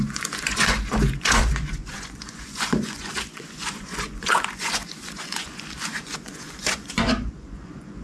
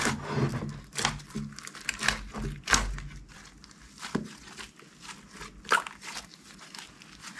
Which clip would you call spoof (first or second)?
first